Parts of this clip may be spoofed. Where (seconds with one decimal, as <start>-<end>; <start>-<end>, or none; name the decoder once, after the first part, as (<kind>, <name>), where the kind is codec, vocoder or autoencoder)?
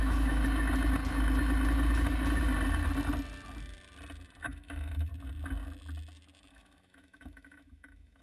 0.0-0.4 (autoencoder, DAC-VAE); 4.4-5.1; 6.5-8.2